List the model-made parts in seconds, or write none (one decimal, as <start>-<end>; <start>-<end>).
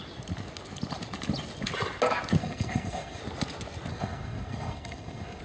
2.4-3.2; 3.9-5.4